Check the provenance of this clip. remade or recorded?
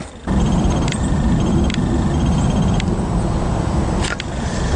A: recorded